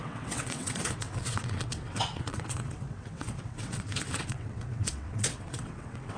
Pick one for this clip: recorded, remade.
remade